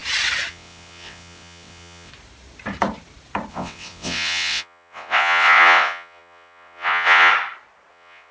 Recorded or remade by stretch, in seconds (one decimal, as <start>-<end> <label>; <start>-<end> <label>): 0.0-0.5 recorded; 0.5-2.1 remade; 2.1-3.5 recorded; 3.5-7.3 remade; 7.3-7.9 recorded; 7.9-8.3 remade